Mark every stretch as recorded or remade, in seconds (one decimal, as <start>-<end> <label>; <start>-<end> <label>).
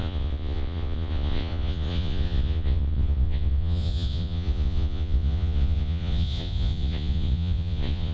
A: 0.0-8.1 remade